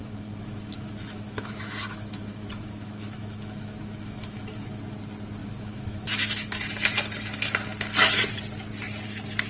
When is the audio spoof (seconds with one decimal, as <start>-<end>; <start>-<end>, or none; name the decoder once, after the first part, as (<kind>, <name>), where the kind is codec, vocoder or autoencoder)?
0.0-4.8 (autoencoder, DAC-VAE); 5.4-6.7